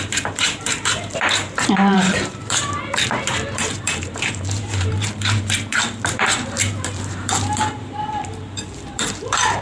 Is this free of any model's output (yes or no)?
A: no